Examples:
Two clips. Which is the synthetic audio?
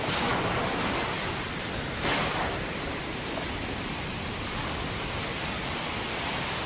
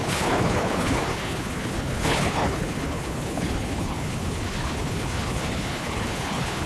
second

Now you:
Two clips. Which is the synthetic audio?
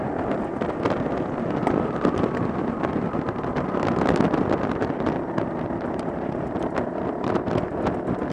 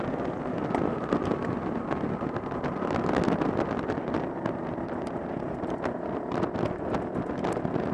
first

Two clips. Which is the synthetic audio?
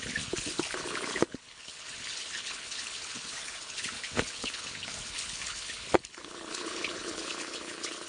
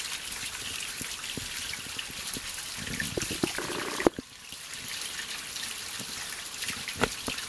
first